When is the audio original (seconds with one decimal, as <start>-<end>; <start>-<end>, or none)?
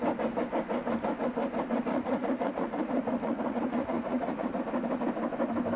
0.0-1.9; 4.6-5.8